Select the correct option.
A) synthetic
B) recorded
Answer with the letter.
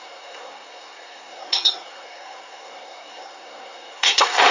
A